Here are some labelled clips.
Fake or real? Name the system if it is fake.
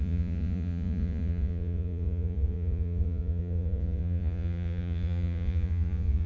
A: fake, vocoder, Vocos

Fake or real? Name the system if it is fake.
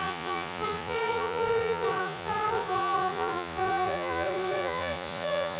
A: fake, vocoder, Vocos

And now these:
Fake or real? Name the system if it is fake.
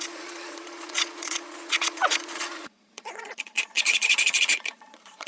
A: fake, vocoder, Vocos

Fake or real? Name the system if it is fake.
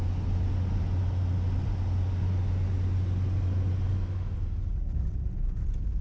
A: real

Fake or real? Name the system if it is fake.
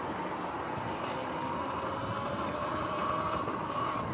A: real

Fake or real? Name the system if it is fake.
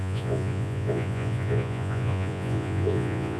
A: fake, vocoder, Vocos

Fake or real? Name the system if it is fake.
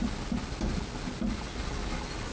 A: real